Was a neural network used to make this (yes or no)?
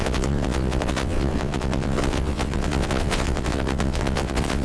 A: yes